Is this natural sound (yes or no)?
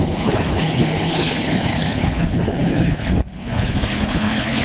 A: no